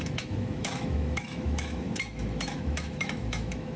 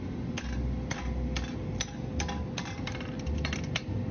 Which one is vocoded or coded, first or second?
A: first